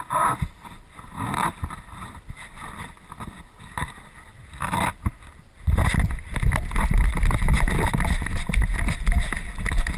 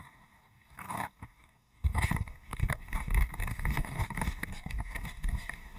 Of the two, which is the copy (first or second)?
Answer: second